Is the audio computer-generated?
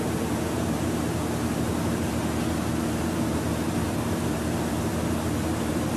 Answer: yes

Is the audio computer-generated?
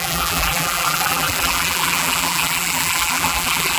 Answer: yes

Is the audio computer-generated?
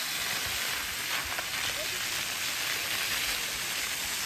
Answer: no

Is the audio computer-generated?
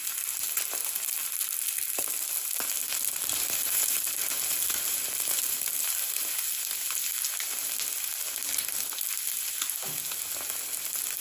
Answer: no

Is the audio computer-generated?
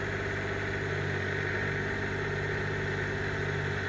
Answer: no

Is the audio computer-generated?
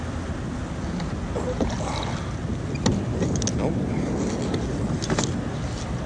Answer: no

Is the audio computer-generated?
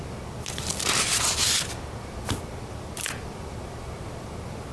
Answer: no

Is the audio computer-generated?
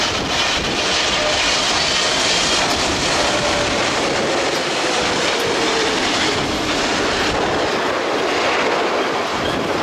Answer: yes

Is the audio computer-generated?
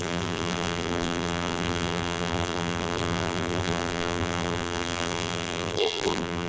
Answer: yes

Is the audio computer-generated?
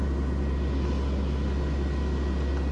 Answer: no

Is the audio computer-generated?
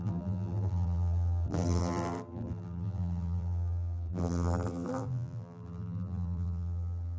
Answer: yes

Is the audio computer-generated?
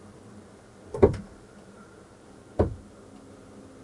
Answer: yes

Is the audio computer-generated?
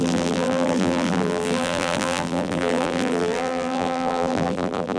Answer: yes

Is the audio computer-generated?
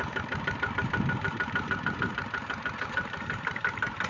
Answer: yes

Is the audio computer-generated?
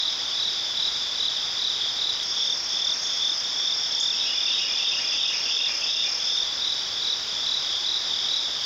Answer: no